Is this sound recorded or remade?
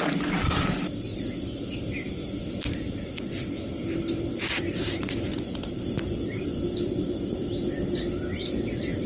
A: recorded